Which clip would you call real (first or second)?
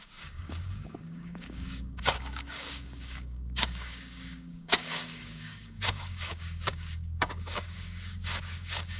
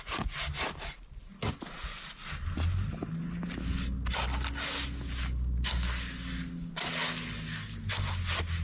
second